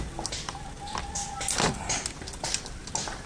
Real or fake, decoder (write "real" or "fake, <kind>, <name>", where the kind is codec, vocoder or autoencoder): real